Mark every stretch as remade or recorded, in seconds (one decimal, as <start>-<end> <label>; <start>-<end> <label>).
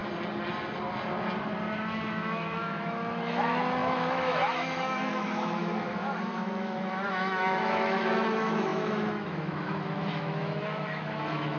0.0-1.8 recorded; 1.8-11.6 remade